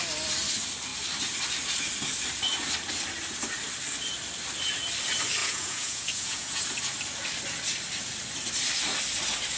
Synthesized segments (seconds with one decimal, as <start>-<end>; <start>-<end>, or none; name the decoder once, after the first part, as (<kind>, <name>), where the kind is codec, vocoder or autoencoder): 5.4-6.6 (vocoder, Vocos)